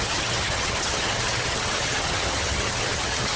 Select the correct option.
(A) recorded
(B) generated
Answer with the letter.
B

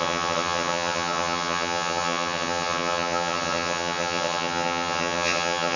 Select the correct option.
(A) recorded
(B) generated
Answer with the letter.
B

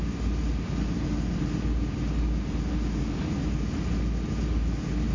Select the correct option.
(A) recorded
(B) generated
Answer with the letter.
A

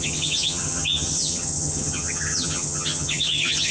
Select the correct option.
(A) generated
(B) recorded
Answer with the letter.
A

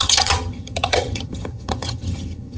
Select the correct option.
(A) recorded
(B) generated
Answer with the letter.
B